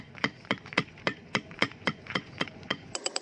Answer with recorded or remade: remade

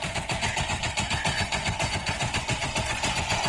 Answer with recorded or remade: remade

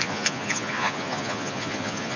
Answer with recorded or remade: remade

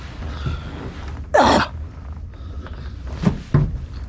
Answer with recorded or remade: recorded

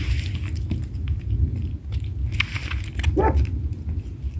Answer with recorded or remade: recorded